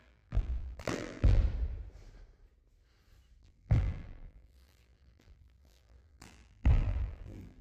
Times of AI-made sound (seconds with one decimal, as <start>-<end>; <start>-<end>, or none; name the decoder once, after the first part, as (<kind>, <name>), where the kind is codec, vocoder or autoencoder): 0.0-1.4 (vocoder, BigVGAN v2); 3.4-7.6